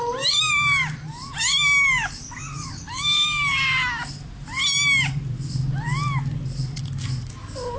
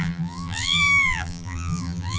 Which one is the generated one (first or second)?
second